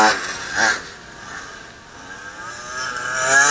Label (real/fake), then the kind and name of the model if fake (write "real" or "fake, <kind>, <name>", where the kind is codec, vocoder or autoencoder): real